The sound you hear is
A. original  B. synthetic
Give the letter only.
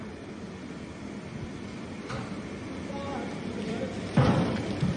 B